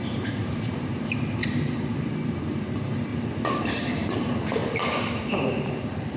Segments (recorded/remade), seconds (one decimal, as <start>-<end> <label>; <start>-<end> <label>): 0.0-1.4 remade; 1.4-2.3 recorded; 2.3-3.1 remade; 3.1-3.6 recorded; 3.6-4.6 remade; 4.6-5.3 recorded; 5.3-6.2 remade